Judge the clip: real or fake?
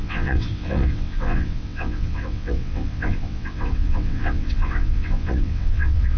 fake